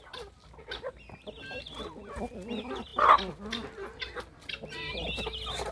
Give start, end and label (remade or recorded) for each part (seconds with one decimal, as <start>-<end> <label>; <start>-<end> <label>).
0.0-5.7 recorded